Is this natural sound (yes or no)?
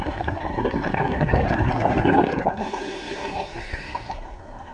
no